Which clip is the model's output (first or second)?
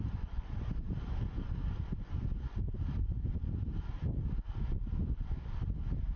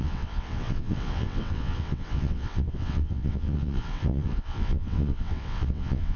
second